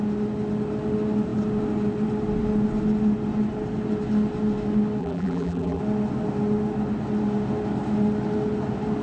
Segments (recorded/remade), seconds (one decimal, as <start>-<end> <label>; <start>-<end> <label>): 0.0-5.0 recorded; 5.0-5.8 remade; 5.8-9.0 recorded